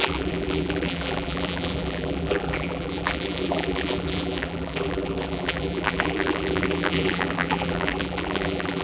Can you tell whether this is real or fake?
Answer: fake